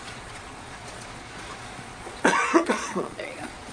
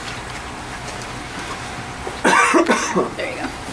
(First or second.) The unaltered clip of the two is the second